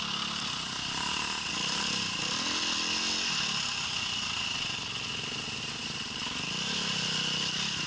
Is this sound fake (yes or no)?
no